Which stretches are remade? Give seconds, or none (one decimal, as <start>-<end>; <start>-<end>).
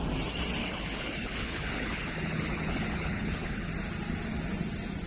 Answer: 0.6-3.7